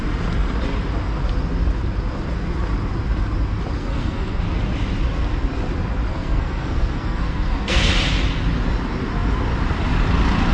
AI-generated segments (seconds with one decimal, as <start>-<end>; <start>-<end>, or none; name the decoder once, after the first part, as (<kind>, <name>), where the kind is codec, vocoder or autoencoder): 3.8-4.4 (codec, SNAC); 6.1-7.9